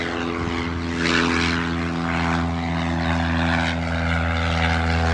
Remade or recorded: recorded